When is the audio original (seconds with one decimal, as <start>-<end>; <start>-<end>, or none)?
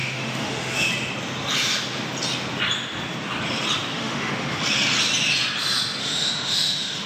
0.9-3.9; 4.6-6.0